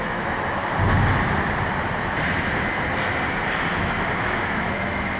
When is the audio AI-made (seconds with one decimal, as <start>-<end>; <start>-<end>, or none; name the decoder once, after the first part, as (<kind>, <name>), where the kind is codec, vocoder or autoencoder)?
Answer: 0.0-0.6 (autoencoder, DAC-VAE); 3.7-5.2